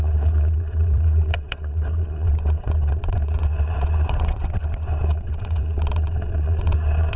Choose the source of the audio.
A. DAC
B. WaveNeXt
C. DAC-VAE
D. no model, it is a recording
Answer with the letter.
B